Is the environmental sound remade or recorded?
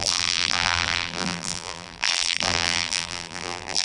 remade